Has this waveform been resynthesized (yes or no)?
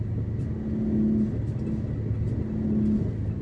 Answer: no